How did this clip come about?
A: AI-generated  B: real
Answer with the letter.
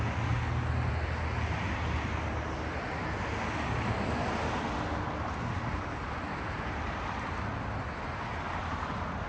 B